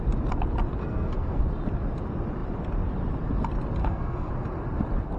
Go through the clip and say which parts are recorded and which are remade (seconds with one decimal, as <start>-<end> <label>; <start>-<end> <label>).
0.0-0.8 recorded; 0.8-1.4 remade; 1.4-3.8 recorded; 3.8-4.3 remade; 4.3-5.2 recorded